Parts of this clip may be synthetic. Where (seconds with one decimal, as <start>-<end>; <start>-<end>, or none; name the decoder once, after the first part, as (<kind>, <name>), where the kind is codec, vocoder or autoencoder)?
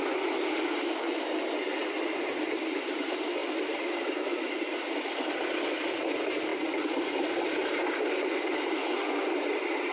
none